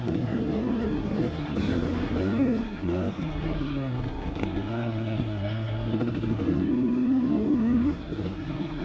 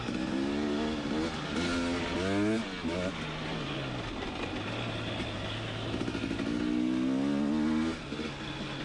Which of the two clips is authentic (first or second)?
second